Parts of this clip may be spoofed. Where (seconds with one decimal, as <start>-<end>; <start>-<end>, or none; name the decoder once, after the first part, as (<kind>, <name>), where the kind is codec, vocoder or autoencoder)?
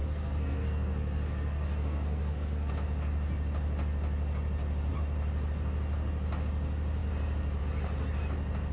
0.0-2.7 (codec, SNAC)